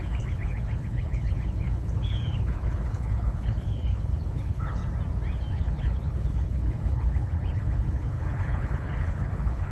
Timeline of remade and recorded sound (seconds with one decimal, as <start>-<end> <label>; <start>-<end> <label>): 0.0-4.8 remade; 4.8-5.5 recorded; 5.5-9.7 remade